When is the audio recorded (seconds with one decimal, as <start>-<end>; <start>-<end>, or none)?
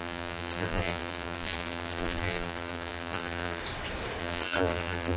3.6-4.2